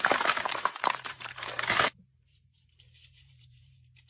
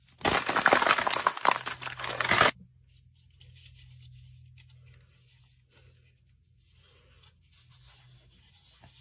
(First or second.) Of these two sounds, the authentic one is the second